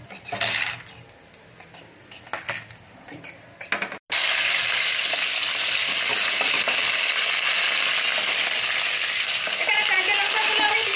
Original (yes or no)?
yes